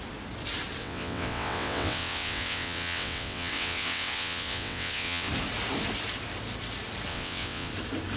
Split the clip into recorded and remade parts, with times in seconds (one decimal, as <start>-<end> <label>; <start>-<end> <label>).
0.0-0.8 recorded; 0.8-5.3 remade; 5.3-7.1 recorded; 7.1-7.7 remade; 7.7-8.2 recorded